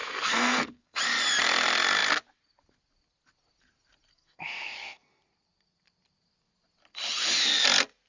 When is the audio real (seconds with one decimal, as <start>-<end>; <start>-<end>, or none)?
1.0-4.1; 5.2-8.1